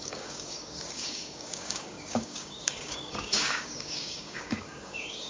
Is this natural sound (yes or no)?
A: no